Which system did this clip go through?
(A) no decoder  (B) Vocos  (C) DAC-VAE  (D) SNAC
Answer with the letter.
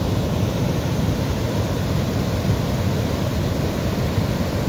A